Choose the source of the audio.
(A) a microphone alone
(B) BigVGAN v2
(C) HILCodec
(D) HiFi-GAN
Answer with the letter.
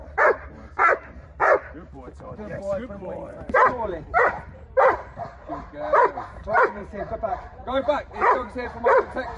B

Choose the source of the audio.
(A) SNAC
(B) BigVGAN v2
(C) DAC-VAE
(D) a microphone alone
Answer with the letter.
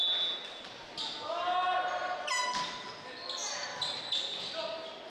D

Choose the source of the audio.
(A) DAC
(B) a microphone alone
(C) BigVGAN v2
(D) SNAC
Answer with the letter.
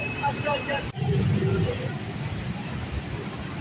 C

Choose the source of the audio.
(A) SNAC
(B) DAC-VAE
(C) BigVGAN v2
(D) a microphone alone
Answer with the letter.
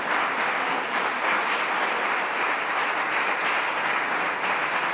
D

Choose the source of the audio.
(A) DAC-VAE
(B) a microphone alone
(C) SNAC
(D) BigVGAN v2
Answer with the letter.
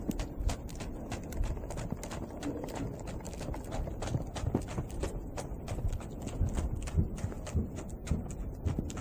B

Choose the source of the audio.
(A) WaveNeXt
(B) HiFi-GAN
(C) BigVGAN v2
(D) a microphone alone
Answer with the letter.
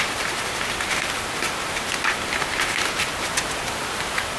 D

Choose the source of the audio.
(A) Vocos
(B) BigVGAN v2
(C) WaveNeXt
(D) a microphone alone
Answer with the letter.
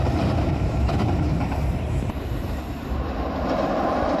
B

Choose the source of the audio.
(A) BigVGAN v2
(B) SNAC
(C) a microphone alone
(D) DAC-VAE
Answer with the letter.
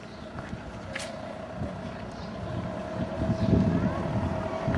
C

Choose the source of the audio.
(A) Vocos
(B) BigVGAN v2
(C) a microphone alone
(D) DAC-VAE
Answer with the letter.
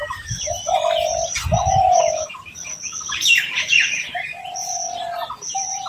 B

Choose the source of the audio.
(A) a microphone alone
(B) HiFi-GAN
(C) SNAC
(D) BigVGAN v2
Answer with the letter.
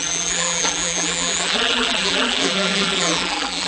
D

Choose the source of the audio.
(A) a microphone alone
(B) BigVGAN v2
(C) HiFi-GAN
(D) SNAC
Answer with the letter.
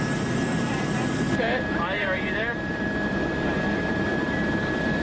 B